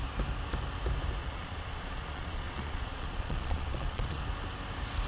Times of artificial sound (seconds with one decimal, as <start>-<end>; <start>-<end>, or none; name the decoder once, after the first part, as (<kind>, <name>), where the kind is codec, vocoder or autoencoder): 1.2-4.2 (vocoder, Vocos)